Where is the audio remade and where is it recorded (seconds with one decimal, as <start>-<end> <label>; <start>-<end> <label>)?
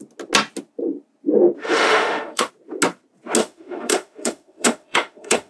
0.0-1.6 recorded; 1.6-2.5 remade; 2.5-3.4 recorded; 3.4-5.5 remade